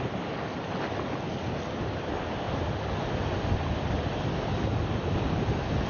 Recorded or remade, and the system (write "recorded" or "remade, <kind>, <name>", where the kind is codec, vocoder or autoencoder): recorded